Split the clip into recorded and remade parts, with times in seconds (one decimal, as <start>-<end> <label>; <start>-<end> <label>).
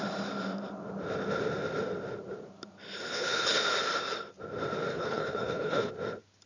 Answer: 0.0-3.1 recorded; 3.1-3.6 remade; 3.6-4.9 recorded; 4.9-5.9 remade; 5.9-6.5 recorded